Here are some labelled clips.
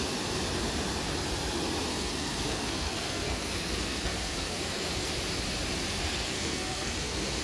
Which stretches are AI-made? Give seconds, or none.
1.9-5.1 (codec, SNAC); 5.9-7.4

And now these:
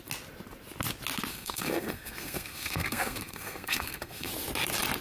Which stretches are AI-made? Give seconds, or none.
1.3-4.3 (codec, SNAC)

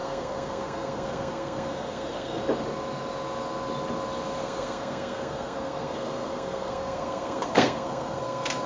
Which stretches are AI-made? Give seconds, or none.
0.0-2.4 (codec, SNAC); 4.4-8.7